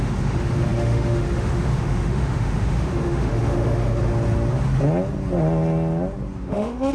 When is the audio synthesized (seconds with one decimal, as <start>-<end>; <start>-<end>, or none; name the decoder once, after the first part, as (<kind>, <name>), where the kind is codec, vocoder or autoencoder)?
0.0-4.1 (autoencoder, DAC-VAE); 6.4-6.9

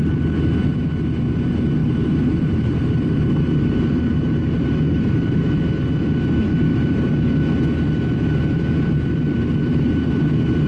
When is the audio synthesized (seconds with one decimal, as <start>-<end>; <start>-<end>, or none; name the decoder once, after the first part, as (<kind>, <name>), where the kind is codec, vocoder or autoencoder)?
1.8-5.4 (vocoder, BigVGAN v2); 6.4-7.1; 8.2-10.1

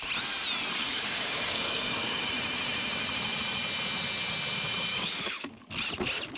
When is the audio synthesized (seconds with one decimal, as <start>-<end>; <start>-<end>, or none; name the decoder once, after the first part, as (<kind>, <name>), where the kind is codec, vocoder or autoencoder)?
0.8-2.3 (codec, DAC); 4.9-5.6